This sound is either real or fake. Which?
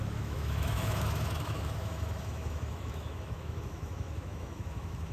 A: fake